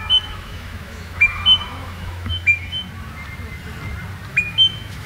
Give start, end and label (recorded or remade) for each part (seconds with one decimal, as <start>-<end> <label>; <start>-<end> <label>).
0.0-2.8 remade; 2.8-4.3 recorded; 4.3-5.1 remade